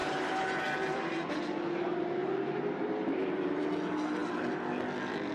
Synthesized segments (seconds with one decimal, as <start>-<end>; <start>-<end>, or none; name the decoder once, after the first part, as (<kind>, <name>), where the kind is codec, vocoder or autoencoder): 0.0-1.3 (vocoder, BigVGAN v2); 2.2-3.6